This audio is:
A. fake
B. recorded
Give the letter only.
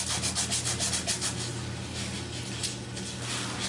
B